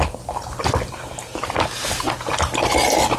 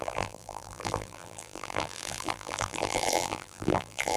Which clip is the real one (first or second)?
first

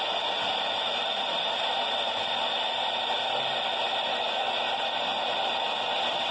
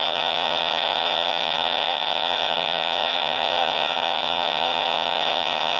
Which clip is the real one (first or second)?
first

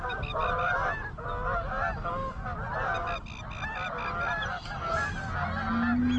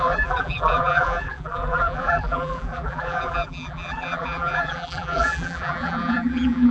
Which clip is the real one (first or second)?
first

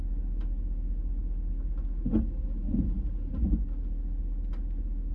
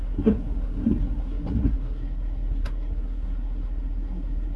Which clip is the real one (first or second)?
first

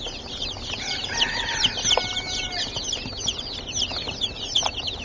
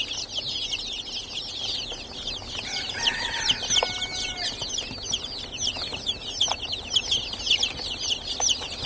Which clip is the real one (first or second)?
second